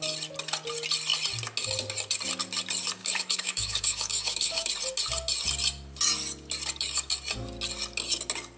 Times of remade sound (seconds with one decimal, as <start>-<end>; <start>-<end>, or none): 3.0-4.7

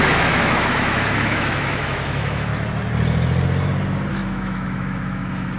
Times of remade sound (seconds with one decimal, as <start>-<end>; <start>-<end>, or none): 0.0-2.5; 4.1-5.6

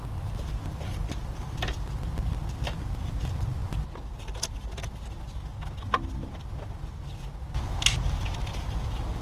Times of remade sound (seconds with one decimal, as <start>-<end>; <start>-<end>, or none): none